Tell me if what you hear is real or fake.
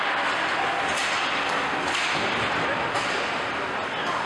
real